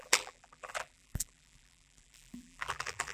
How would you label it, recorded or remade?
remade